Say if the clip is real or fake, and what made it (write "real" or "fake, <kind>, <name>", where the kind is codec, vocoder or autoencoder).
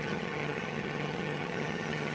fake, vocoder, HiFi-GAN